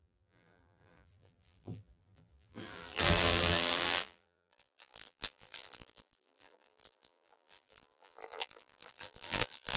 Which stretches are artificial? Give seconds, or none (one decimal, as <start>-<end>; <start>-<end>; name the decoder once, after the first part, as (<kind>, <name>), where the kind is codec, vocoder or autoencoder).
0.0-9.8 (vocoder, BigVGAN v2)